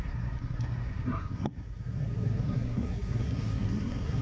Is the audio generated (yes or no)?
yes